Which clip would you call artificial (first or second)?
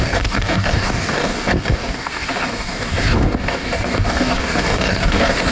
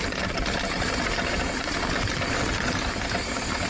first